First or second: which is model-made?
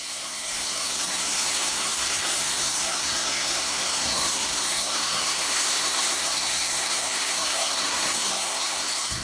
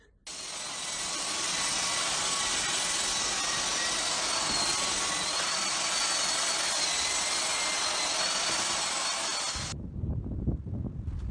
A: first